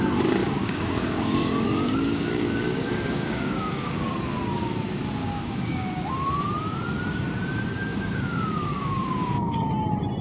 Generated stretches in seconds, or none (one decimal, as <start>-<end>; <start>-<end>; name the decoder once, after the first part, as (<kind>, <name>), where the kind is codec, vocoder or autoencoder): 0.4-4.1 (codec, DAC); 5.2-6.1; 7.7-9.7